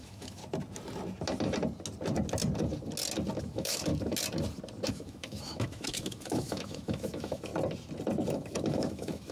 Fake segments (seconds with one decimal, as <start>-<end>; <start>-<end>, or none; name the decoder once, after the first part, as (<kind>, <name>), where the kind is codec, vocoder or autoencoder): 0.0-0.4 (autoencoder, DAC-VAE); 3.4-3.9; 4.9-7.5; 8.3-9.3